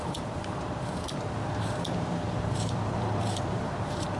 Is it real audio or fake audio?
fake